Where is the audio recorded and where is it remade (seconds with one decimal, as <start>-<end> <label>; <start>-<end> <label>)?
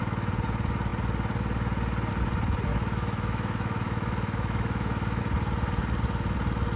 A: 0.0-2.7 recorded; 2.7-5.2 remade; 5.2-6.8 recorded